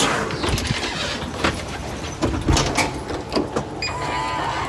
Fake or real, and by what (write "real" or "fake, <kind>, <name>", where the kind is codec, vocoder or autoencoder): real